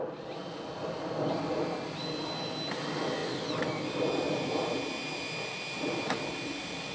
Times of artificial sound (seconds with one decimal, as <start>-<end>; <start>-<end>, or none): 0.8-1.6; 3.2-6.9